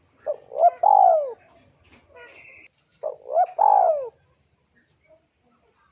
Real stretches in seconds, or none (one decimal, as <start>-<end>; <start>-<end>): 0.0-5.9